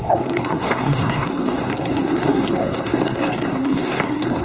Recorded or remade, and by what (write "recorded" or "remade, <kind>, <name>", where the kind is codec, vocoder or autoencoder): remade, codec, SNAC